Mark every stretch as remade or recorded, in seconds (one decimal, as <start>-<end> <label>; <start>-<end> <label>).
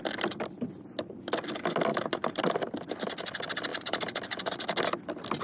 0.0-1.9 recorded; 1.9-2.4 remade; 2.4-3.7 recorded; 3.7-4.5 remade; 4.5-5.4 recorded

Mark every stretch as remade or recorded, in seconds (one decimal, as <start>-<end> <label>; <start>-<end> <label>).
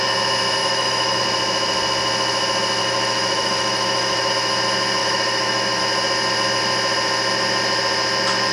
0.0-0.6 recorded; 0.6-1.2 remade; 1.2-2.8 recorded; 2.8-4.3 remade; 4.3-5.0 recorded; 5.0-5.8 remade; 5.8-8.5 recorded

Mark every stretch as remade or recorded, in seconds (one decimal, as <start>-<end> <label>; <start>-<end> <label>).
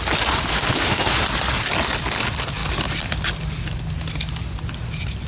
0.0-0.5 recorded; 0.5-1.2 remade; 1.2-5.3 recorded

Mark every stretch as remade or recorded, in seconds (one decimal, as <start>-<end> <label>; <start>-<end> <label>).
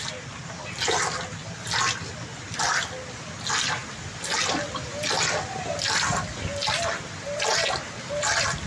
0.0-8.7 recorded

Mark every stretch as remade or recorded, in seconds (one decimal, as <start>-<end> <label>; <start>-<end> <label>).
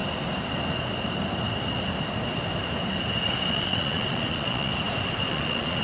0.0-3.5 recorded; 3.5-4.7 remade; 4.7-5.3 recorded; 5.3-5.8 remade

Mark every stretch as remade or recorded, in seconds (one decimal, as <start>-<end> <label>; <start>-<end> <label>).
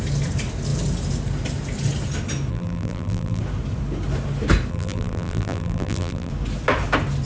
0.0-2.5 recorded; 2.5-3.4 remade; 3.4-4.7 recorded; 4.7-6.3 remade; 6.3-7.3 recorded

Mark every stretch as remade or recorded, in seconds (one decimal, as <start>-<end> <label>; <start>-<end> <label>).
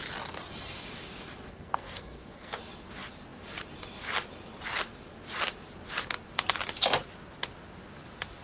0.0-1.5 recorded; 1.5-2.6 remade; 2.6-8.4 recorded